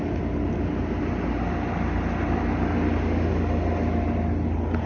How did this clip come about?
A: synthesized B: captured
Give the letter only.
B